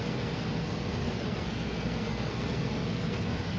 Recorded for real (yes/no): no